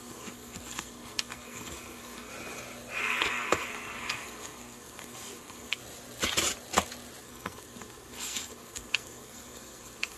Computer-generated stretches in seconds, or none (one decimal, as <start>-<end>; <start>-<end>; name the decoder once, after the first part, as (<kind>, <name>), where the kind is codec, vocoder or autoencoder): 0.0-2.3 (codec, SNAC); 3.0-5.8; 7.2-10.2